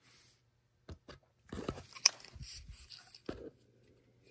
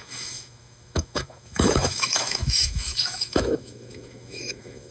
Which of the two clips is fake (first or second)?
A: second